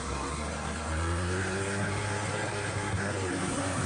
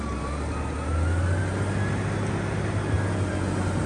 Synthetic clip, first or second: first